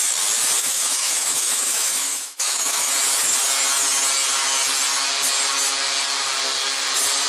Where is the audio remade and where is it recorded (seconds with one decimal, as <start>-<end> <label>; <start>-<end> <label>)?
0.0-0.6 recorded; 0.6-2.9 remade; 2.9-7.3 recorded